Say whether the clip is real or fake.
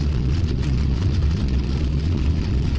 fake